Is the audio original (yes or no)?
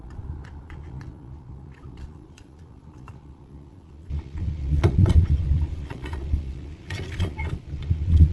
no